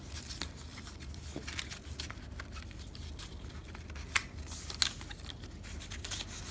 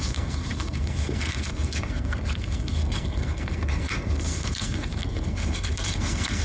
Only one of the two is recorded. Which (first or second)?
first